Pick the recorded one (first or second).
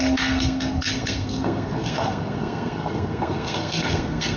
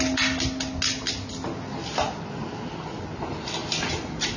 second